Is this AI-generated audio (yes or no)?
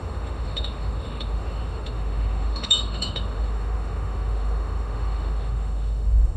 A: yes